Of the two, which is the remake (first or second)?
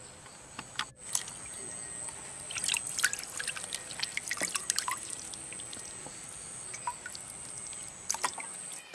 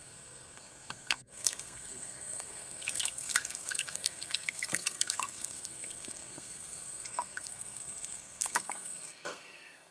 second